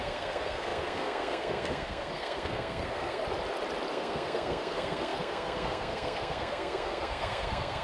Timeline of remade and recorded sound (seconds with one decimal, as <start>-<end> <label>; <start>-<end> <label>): 0.0-3.2 remade; 3.2-3.9 recorded; 3.9-7.8 remade